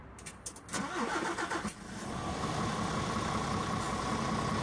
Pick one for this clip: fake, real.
real